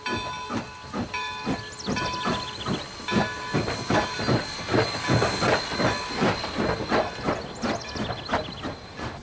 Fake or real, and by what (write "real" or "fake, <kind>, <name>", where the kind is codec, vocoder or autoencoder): real